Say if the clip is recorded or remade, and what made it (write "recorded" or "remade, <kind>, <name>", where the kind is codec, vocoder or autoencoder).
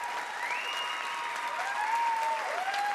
recorded